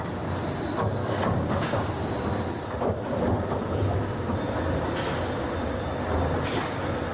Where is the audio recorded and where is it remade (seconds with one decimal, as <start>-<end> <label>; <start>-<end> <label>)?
0.0-1.0 recorded; 1.0-2.0 remade; 2.0-7.1 recorded